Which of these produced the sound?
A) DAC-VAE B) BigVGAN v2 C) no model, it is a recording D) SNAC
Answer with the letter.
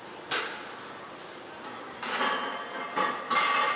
C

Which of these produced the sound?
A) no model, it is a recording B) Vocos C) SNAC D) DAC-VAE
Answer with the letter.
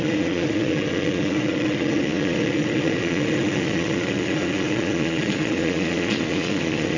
B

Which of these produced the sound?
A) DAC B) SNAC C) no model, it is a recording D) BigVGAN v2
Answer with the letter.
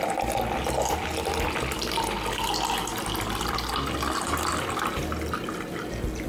C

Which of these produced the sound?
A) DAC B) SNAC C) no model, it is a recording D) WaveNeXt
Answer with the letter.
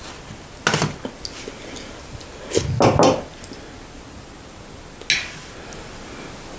C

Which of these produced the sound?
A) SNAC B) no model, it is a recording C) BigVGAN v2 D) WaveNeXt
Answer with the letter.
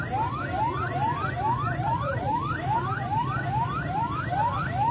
C